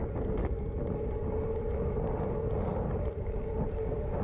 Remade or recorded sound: recorded